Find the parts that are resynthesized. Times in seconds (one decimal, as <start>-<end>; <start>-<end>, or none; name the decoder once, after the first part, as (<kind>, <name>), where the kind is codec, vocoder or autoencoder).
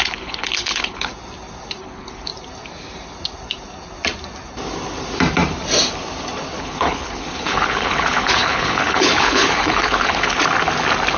0.0-1.1 (codec, HILCodec); 1.8-2.3; 6.6-10.4